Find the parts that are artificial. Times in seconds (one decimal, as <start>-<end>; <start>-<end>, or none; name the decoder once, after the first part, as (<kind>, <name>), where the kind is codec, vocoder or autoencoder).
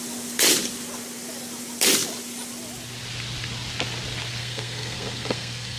4.4-5.8 (codec, SNAC)